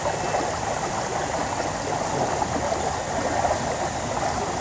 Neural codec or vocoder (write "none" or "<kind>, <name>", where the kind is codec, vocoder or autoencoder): none